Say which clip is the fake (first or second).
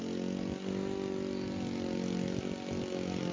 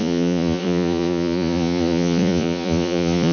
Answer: second